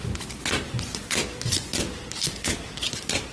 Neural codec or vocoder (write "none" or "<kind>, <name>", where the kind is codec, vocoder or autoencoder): none